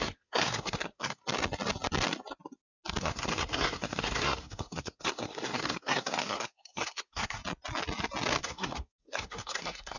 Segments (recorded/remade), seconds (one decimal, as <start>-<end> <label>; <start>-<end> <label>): 0.0-1.2 remade; 1.2-3.0 recorded; 3.0-7.4 remade; 7.4-8.4 recorded; 8.4-10.0 remade